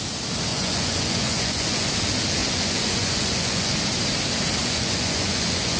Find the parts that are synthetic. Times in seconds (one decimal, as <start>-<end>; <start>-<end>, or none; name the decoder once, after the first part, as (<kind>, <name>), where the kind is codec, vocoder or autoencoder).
0.5-1.9 (vocoder, Vocos); 2.4-3.7; 4.6-5.8